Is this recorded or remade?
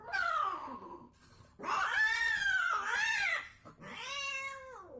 recorded